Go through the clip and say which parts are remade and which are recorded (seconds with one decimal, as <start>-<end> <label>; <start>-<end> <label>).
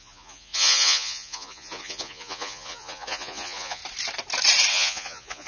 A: 0.0-3.8 remade; 3.8-4.7 recorded; 4.7-5.5 remade